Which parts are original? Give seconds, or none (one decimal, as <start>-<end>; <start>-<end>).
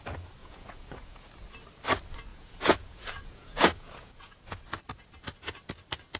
0.0-0.4; 1.3-2.3; 4.8-6.2